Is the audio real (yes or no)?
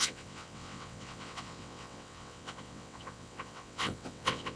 no